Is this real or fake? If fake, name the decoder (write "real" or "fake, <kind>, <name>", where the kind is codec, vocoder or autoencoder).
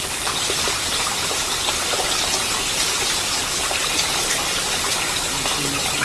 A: real